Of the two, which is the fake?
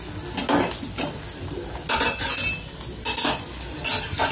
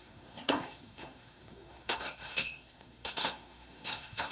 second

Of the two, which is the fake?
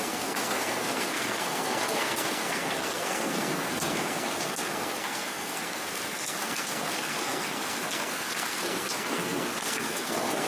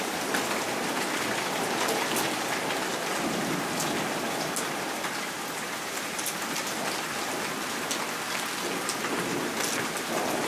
first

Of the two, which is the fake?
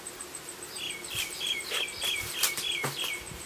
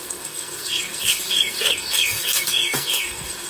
second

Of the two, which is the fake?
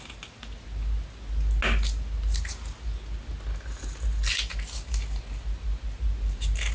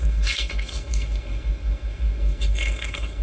second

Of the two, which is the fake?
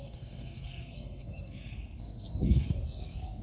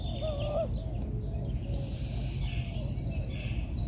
first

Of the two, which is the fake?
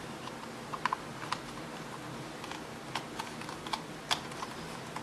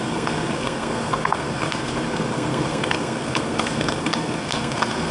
second